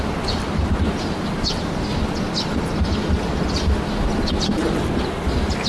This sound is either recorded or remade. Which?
recorded